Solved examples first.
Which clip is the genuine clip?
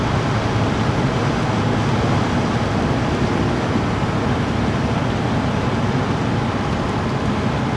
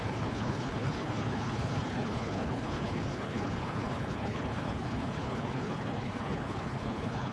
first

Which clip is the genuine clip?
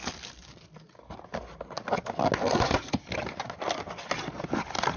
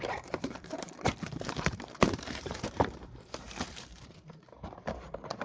first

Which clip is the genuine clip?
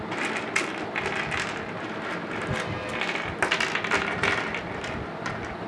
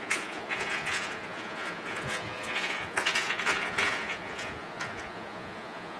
first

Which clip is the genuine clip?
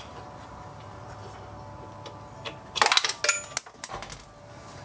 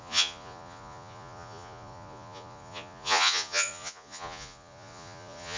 first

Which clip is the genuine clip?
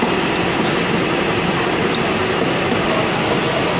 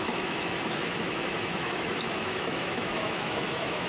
first